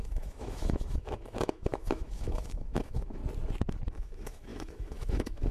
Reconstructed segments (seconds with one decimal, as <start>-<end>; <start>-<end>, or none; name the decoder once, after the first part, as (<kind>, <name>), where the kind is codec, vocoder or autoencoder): 0.0-3.2 (autoencoder, DAC-VAE); 3.9-5.5